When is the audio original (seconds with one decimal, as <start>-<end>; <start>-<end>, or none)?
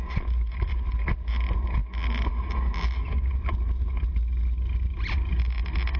0.0-6.0